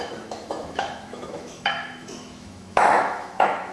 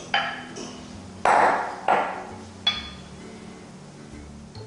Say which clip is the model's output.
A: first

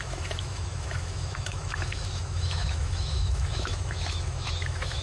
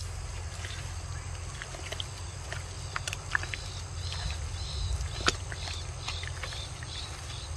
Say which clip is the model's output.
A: first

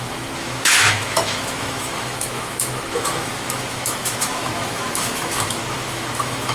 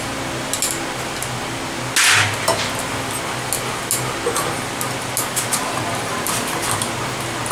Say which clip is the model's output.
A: first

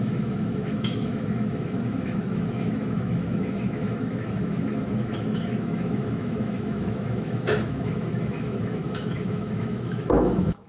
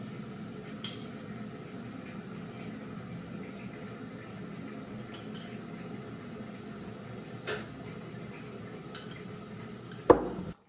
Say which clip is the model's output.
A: first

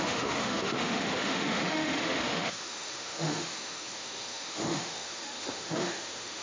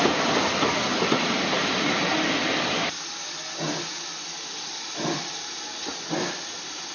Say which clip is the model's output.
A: first